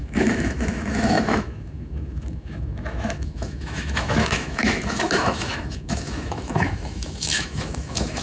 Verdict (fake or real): fake